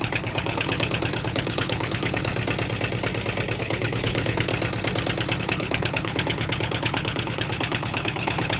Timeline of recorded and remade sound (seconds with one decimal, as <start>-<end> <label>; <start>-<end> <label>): 0.0-2.3 remade; 2.3-3.6 recorded; 3.6-4.5 remade; 4.5-5.4 recorded; 5.4-8.6 remade